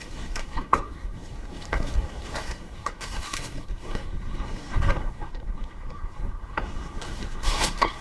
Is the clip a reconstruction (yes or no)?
yes